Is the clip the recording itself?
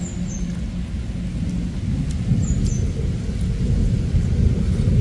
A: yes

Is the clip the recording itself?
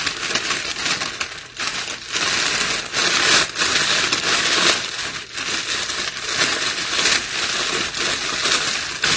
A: yes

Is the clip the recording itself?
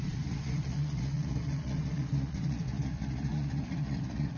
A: no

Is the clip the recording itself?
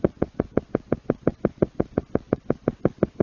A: no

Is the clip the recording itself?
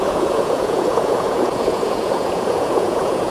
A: no